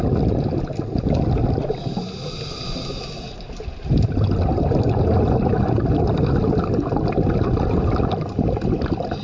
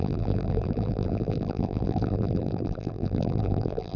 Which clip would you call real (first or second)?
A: first